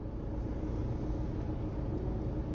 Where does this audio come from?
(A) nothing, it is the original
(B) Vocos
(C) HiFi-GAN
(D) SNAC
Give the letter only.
A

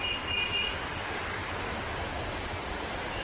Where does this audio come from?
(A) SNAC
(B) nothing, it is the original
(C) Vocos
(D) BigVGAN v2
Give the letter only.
B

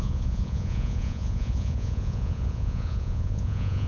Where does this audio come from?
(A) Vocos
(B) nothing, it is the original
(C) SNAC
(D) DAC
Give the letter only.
A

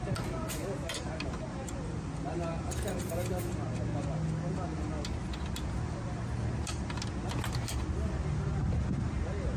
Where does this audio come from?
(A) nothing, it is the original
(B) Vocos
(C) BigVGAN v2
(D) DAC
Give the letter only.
A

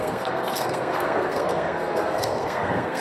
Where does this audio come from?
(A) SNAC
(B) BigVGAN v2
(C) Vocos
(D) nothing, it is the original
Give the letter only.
A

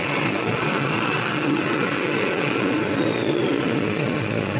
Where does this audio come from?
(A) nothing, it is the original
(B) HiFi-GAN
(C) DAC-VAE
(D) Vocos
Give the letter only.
D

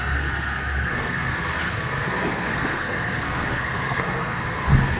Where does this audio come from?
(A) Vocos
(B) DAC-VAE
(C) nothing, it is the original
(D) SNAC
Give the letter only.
D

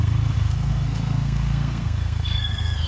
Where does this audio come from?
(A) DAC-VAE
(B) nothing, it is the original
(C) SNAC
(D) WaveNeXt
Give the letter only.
C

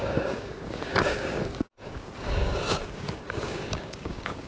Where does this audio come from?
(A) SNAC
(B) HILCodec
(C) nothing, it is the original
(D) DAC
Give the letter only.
D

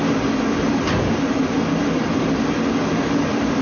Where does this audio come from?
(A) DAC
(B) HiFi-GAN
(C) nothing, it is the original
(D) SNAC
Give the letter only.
C